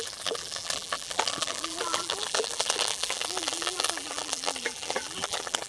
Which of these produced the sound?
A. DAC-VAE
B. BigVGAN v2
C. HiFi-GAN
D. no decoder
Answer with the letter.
B